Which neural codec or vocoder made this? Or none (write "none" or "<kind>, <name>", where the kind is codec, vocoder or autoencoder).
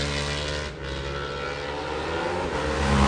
none